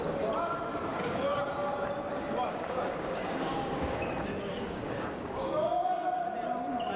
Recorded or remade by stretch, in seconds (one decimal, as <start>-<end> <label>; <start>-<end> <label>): 0.0-0.9 recorded; 0.9-1.4 remade; 1.4-2.5 recorded; 2.5-6.3 remade; 6.3-7.0 recorded